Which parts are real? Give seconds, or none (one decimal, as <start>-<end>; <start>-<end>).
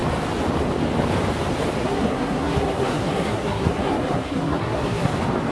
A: 0.0-1.8; 5.1-5.5